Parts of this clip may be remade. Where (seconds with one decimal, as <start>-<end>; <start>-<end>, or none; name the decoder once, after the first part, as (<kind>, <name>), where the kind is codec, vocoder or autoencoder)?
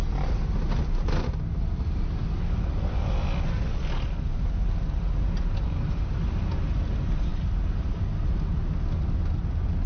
none